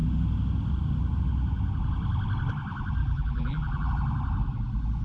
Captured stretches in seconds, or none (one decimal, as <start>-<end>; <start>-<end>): 0.0-3.0; 3.9-5.0